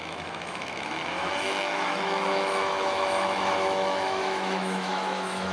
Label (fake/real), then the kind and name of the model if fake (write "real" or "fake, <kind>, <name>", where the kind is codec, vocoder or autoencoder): fake, autoencoder, DAC-VAE